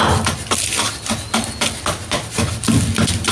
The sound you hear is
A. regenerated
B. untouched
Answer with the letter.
B